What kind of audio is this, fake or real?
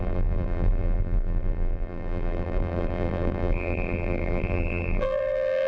fake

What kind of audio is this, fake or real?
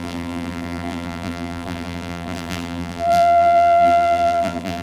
fake